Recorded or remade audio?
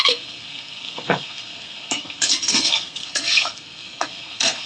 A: remade